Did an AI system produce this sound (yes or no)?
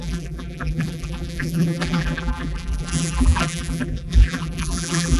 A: yes